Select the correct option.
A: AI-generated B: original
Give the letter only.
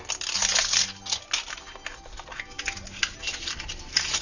B